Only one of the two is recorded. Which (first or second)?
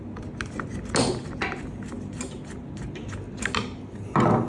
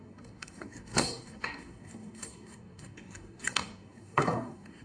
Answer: first